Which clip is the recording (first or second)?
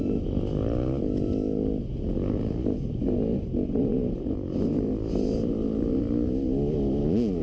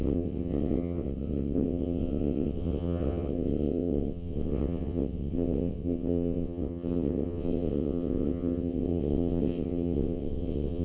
first